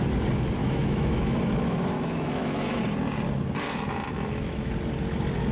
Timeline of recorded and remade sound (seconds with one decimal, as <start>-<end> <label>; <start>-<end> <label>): 0.0-0.6 recorded; 0.6-2.8 remade; 2.8-4.1 recorded; 4.1-4.7 remade; 4.7-5.5 recorded